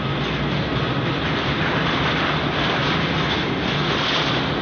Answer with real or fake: real